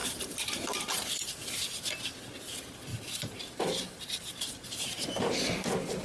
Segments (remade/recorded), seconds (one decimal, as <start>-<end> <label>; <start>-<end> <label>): 0.0-0.9 remade; 0.9-2.9 recorded; 2.9-5.0 remade; 5.0-6.0 recorded